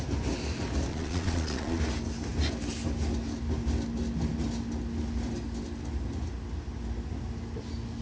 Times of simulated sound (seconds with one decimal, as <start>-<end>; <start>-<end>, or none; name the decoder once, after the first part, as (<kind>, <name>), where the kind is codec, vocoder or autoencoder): 0.9-1.8 (vocoder, Vocos)